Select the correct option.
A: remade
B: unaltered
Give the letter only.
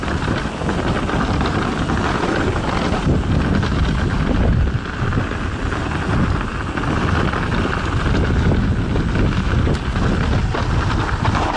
B